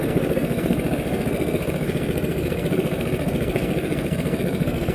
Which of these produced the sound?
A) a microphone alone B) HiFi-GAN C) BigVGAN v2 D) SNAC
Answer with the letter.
D